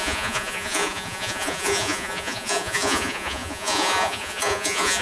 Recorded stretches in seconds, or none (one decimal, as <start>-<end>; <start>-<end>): none